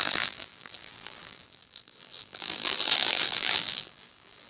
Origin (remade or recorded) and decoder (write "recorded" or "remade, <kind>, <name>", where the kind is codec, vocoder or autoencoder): remade, vocoder, BigVGAN v2